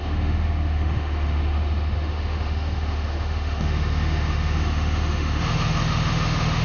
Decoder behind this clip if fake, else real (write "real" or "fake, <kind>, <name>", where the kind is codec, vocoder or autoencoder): fake, autoencoder, DAC-VAE